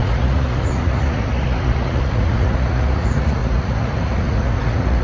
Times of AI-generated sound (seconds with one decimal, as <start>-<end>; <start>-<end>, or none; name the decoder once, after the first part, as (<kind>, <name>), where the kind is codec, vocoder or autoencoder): 0.0-5.0 (vocoder, Vocos)